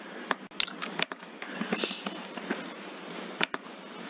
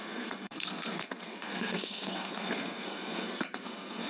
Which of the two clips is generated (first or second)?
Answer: second